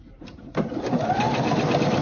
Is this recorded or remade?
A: remade